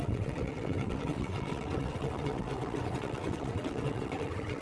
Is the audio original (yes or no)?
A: no